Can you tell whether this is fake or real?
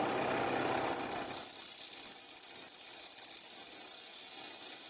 real